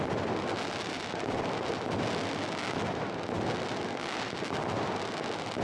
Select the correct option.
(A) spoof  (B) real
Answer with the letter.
B